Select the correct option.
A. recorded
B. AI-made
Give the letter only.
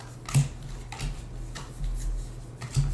A